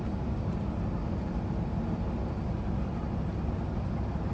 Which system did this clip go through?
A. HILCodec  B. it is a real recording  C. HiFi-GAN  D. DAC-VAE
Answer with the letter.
B